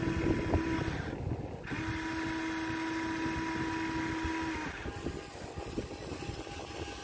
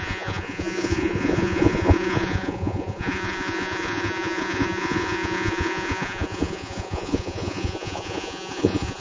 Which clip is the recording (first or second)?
first